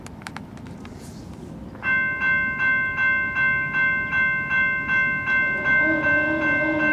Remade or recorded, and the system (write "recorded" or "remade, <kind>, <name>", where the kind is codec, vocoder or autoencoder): recorded